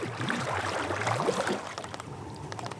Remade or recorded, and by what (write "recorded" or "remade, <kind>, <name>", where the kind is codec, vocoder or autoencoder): remade, vocoder, BigVGAN v2